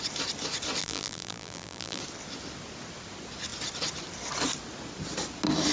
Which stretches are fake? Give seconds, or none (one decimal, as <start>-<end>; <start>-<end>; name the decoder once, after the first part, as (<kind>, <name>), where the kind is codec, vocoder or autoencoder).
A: 0.8-2.0 (vocoder, BigVGAN v2)